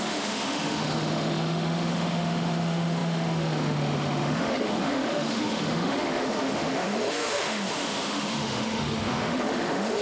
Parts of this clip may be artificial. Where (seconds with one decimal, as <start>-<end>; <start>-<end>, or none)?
0.0-10.0